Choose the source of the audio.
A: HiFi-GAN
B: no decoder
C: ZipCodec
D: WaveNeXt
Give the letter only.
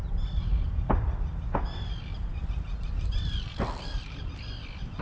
B